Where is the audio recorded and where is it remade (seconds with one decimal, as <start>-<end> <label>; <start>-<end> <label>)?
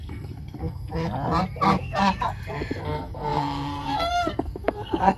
0.0-0.9 remade; 0.9-1.7 recorded; 1.7-5.2 remade